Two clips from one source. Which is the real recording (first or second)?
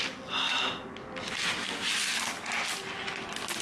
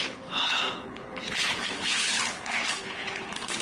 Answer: first